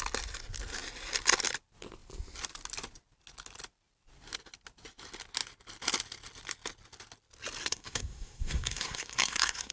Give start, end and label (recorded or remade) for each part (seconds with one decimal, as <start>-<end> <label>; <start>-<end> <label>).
0.0-7.6 recorded; 7.6-9.7 remade